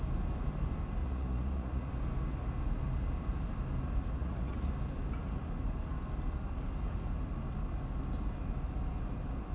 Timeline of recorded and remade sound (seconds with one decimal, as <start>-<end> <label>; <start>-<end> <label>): 0.0-1.0 recorded; 1.0-1.9 remade; 1.9-4.2 recorded; 4.2-4.7 remade; 4.7-9.5 recorded